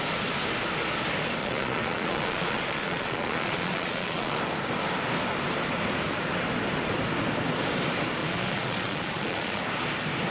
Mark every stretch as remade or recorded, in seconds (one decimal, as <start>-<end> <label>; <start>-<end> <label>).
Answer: 0.0-1.4 recorded; 1.4-4.4 remade; 4.4-8.2 recorded; 8.2-9.6 remade; 9.6-10.3 recorded